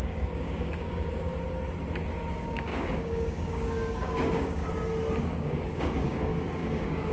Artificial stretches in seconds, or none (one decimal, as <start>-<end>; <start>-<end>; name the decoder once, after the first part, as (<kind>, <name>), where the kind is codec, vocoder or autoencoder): 0.0-1.3 (codec, DAC); 2.3-4.6; 5.2-7.1